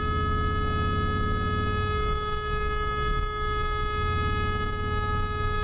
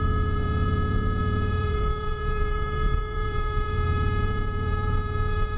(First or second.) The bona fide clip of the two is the first